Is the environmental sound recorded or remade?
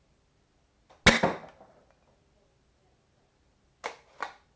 recorded